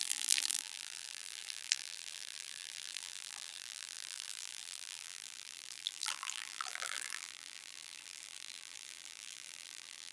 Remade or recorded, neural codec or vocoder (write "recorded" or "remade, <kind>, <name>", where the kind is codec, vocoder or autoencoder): remade, vocoder, BigVGAN v2